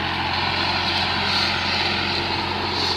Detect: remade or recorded recorded